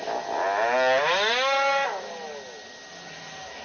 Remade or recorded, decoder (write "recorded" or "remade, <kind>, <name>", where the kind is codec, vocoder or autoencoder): recorded